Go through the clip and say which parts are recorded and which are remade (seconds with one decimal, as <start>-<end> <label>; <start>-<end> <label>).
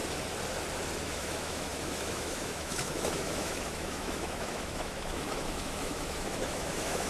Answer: 0.0-1.0 recorded; 1.0-7.1 remade